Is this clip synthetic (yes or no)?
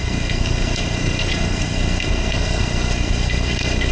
yes